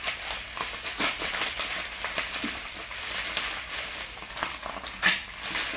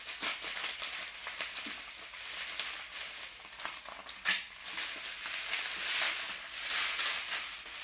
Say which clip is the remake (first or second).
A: first